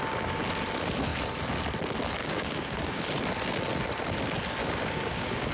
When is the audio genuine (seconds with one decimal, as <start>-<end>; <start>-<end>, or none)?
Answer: 0.0-2.2; 3.0-4.6